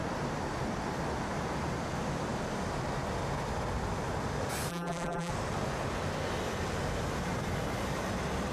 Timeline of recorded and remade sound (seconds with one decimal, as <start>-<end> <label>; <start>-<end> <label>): 0.0-4.7 recorded; 4.7-5.3 remade; 5.3-8.5 recorded